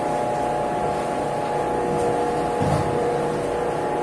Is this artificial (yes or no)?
no